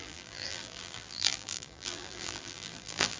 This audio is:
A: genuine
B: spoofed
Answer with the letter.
B